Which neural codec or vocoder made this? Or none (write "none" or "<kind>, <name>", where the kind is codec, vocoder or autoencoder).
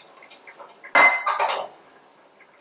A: none